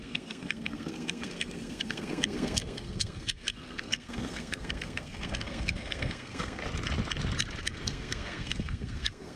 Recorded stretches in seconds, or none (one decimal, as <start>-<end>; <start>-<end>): 6.6-7.6